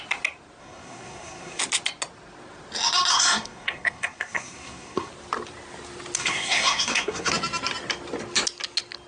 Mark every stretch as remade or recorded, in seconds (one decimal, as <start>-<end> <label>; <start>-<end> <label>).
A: 0.0-0.6 recorded; 0.6-1.6 remade; 1.6-3.1 recorded; 3.1-5.1 remade; 5.1-6.2 recorded; 6.2-7.3 remade; 7.3-9.1 recorded